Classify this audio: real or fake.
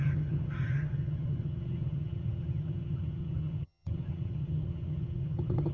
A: fake